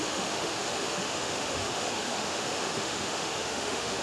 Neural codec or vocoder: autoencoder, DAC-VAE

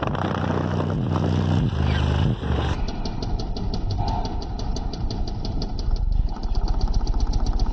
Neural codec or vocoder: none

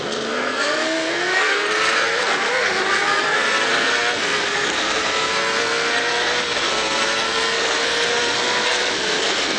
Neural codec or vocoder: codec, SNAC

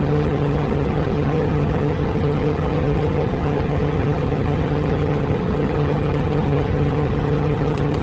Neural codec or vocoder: vocoder, HiFi-GAN